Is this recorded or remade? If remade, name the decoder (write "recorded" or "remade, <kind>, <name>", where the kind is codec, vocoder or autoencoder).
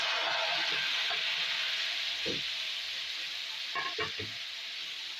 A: recorded